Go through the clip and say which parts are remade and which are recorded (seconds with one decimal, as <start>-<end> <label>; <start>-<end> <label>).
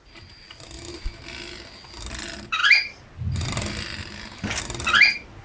0.0-5.4 recorded